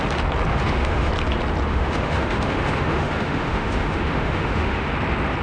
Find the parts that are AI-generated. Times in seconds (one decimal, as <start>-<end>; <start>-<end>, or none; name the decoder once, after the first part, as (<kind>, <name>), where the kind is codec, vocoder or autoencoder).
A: 0.5-1.1 (autoencoder, DAC-VAE); 1.7-4.9